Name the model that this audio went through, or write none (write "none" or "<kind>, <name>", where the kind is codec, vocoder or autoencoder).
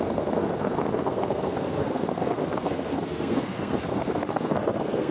codec, SNAC